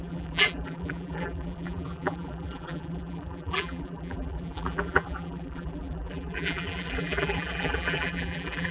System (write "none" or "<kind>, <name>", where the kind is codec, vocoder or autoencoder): vocoder, BigVGAN v2